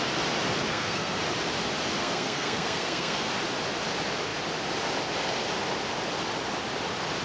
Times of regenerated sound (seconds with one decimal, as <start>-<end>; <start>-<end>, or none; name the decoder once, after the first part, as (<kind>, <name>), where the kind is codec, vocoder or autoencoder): 0.7-1.2 (codec, SNAC); 2.0-3.3